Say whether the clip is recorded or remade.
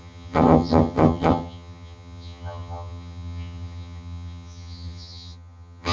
remade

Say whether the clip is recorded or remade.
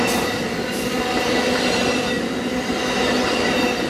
recorded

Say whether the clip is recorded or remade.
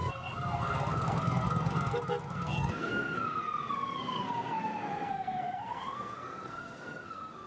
remade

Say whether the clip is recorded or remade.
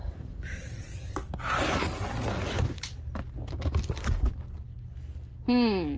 recorded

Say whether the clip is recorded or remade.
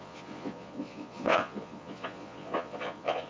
remade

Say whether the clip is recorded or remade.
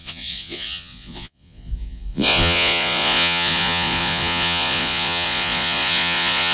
remade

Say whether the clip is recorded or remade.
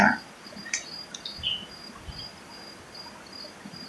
recorded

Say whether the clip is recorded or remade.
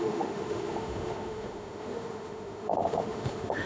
remade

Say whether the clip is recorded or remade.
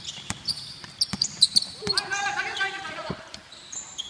remade